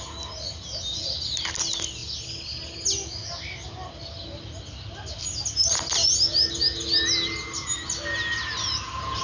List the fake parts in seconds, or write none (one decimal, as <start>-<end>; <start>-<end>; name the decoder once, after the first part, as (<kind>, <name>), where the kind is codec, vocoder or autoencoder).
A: none